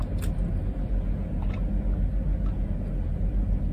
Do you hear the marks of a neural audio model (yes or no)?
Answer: no